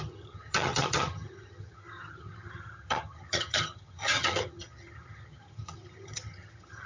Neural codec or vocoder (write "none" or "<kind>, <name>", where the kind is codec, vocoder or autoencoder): vocoder, HiFi-GAN